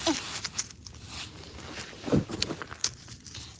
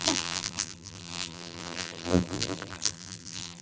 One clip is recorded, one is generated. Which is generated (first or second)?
second